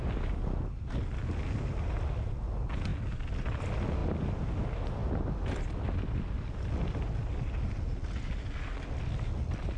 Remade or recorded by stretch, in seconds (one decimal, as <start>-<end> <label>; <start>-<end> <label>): 0.0-9.8 recorded